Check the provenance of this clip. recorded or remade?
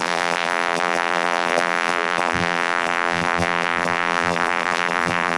remade